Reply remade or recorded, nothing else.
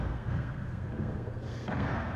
remade